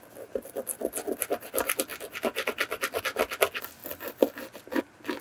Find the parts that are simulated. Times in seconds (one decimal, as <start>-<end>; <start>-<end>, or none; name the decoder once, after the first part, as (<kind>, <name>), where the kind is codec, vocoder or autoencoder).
none